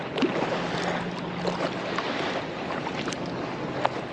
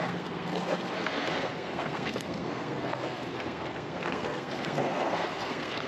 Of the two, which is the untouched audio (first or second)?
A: first